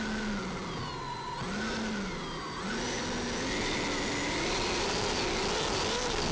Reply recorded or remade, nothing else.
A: recorded